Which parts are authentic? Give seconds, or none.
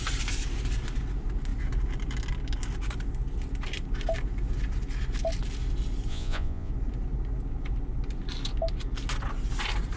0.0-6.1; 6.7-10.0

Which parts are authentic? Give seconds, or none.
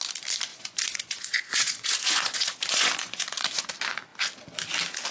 0.0-0.5; 3.6-5.1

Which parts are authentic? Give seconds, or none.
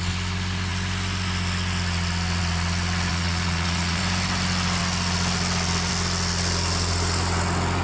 0.0-3.1; 4.0-7.8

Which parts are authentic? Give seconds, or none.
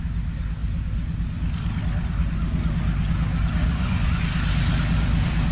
0.0-3.6; 4.2-5.5